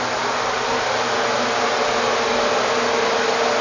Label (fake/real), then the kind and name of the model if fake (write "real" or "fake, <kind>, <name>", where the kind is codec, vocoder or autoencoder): real